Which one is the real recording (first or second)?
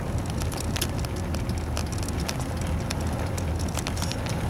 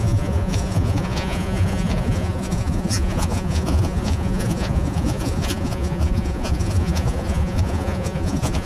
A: first